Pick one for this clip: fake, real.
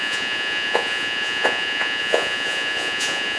fake